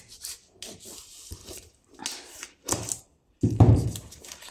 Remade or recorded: recorded